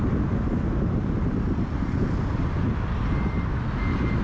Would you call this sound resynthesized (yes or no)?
no